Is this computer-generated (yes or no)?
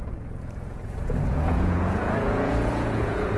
yes